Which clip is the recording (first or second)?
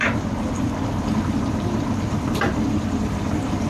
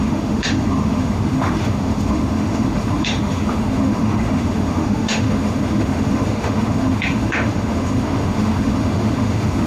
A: first